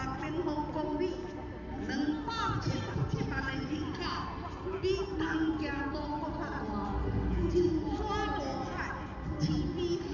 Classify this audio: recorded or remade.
recorded